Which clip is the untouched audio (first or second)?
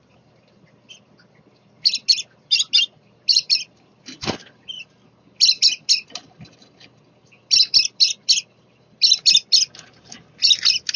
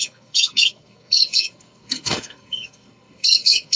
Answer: first